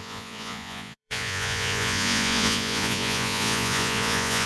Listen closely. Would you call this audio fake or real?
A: fake